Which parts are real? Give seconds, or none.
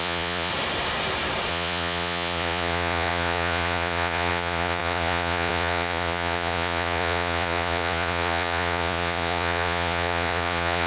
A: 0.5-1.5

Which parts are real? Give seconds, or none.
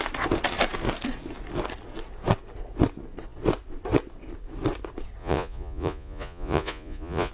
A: 0.0-5.2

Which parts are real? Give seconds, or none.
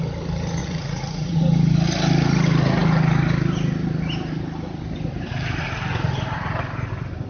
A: 0.0-0.6; 1.4-7.3